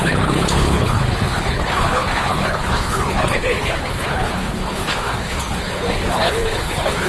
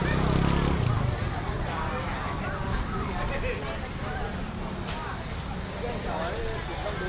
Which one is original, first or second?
second